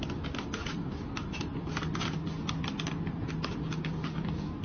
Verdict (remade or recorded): recorded